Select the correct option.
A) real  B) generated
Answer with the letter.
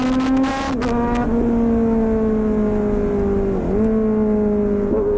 A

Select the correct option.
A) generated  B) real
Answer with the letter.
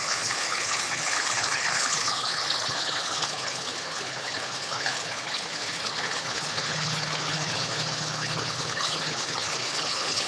A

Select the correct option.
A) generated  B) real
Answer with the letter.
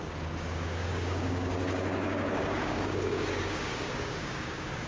A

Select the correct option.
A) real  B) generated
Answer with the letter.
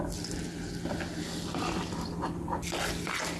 A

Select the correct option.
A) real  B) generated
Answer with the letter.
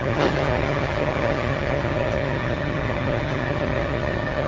B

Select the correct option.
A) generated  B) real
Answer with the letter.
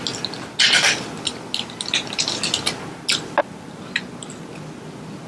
B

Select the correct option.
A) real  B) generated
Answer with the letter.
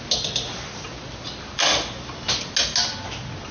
A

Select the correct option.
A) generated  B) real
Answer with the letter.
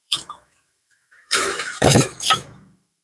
A